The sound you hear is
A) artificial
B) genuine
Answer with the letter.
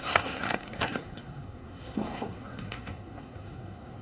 A